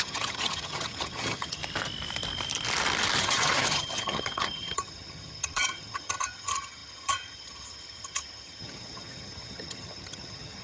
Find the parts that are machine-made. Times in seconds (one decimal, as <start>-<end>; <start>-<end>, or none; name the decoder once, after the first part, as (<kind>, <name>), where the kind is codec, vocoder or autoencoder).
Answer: 0.0-1.6 (vocoder, HiFi-GAN); 3.2-10.6